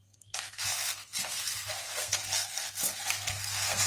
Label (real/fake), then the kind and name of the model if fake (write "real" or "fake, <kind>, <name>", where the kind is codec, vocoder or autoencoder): fake, codec, SNAC